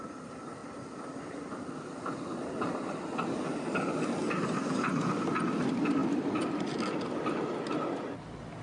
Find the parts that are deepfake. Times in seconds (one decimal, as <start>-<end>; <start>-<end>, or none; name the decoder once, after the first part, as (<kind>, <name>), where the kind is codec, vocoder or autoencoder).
0.6-2.0 (vocoder, BigVGAN v2); 6.0-7.2